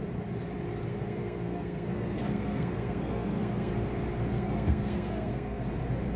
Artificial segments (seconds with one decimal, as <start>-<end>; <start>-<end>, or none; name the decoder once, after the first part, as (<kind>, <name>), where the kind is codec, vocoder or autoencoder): 0.9-3.7 (codec, SNAC); 4.3-5.7